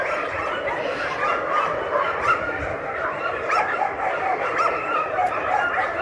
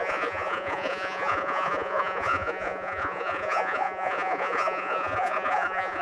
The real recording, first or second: first